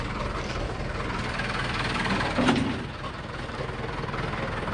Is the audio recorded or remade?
recorded